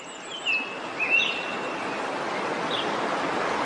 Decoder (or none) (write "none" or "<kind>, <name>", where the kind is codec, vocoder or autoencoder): none